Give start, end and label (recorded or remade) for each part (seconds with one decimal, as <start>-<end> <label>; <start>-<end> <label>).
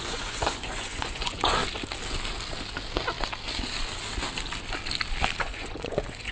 0.0-1.6 remade; 1.6-5.4 recorded; 5.4-6.3 remade